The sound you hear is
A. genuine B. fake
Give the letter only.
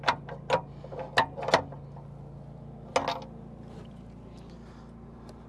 A